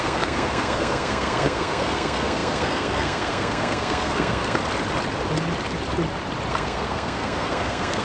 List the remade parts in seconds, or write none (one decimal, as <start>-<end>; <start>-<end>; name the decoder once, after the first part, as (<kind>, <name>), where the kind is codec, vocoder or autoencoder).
0.0-4.6 (codec, SNAC); 6.5-8.0